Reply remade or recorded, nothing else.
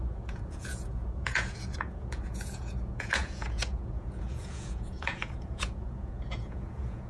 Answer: remade